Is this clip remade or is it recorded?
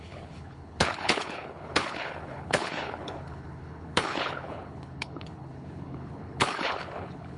remade